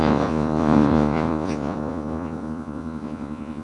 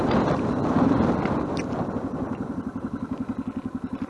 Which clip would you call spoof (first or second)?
first